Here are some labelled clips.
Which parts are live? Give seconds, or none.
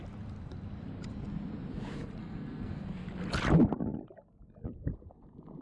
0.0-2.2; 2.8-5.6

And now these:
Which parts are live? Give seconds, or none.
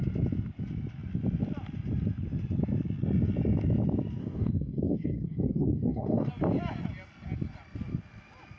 0.0-4.2; 6.3-8.6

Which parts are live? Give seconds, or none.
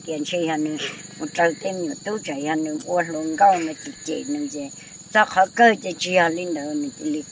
0.0-7.3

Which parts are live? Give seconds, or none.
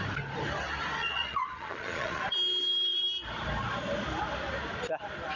0.0-1.0; 2.2-5.4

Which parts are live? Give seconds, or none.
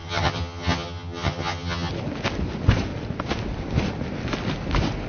1.9-5.1